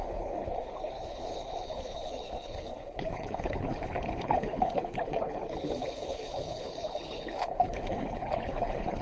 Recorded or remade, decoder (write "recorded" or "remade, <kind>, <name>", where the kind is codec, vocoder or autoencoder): remade, codec, HILCodec